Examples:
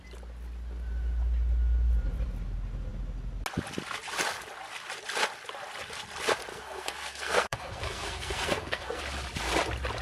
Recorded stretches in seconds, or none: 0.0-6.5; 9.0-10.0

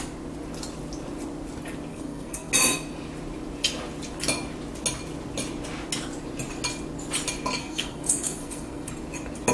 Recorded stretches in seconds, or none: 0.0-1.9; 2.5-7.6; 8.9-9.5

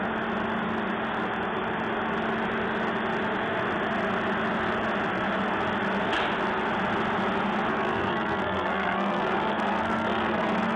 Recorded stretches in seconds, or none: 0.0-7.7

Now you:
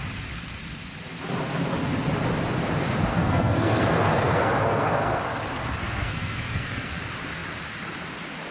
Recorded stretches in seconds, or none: 0.0-3.1; 5.2-5.8; 7.0-8.5

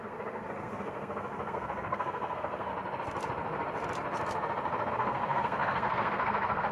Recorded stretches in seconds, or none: 2.7-4.9

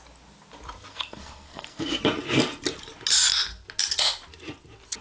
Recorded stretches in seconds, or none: 0.0-0.9; 2.0-5.0

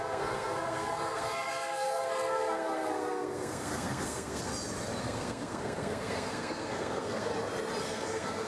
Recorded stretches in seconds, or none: 4.5-5.0; 7.3-7.8

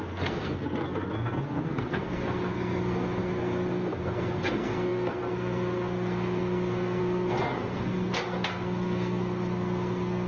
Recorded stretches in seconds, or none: none